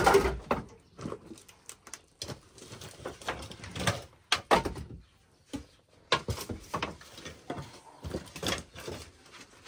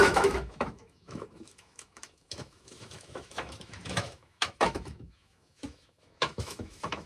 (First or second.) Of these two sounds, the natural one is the first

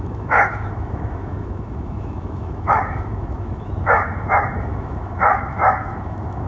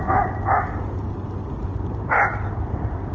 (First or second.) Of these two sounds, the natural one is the second